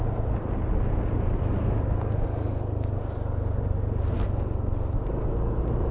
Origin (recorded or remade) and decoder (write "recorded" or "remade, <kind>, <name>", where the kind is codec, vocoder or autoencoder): recorded